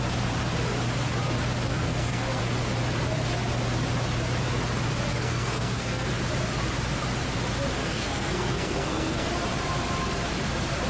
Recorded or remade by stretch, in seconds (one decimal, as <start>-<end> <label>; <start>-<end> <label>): 0.0-1.7 recorded; 1.7-2.4 remade; 2.4-5.1 recorded; 5.1-6.1 remade; 6.1-7.8 recorded; 7.8-9.3 remade; 9.3-10.9 recorded